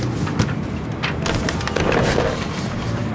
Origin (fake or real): real